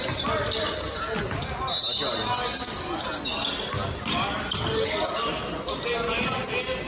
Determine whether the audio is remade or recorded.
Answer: recorded